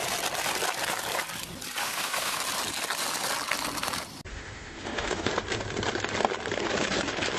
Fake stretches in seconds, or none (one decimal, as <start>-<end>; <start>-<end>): 1.8-2.4; 4.3-5.3